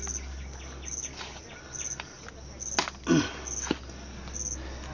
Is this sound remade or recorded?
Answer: recorded